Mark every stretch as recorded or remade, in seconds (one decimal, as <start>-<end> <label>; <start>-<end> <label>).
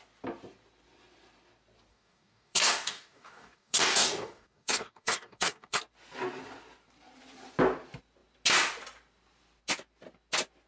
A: 0.0-1.9 recorded; 1.9-5.8 remade; 5.8-10.7 recorded